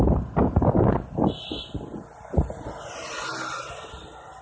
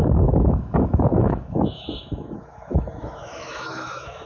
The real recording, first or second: first